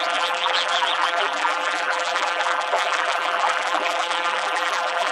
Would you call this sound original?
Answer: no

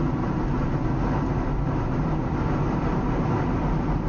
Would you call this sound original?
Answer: yes